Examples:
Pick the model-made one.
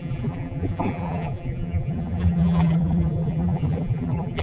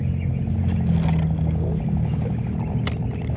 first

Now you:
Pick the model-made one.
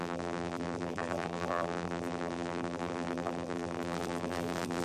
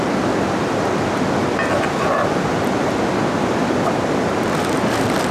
first